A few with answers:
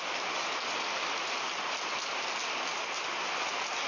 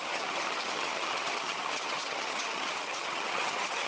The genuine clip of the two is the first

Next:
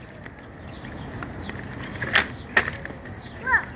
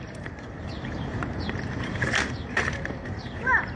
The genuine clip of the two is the first